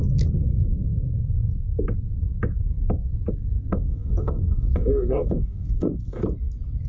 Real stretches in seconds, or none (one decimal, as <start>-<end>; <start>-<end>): 0.0-3.7; 6.2-6.9